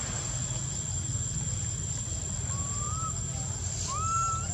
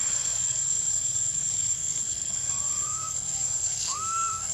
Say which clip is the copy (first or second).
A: second